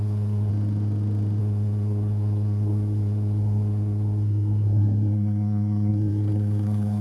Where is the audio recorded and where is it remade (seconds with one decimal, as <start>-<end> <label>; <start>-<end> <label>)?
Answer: 0.0-0.5 remade; 0.5-1.4 recorded; 1.4-7.0 remade